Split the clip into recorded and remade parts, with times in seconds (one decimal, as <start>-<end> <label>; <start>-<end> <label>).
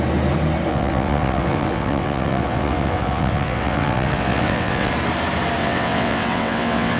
0.0-0.7 recorded; 0.7-4.9 remade; 4.9-5.6 recorded; 5.6-7.0 remade